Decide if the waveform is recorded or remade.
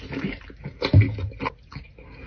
recorded